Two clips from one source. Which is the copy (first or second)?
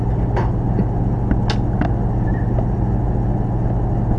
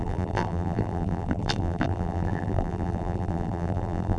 second